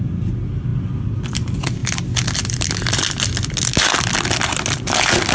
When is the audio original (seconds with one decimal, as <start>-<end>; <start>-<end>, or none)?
0.0-5.3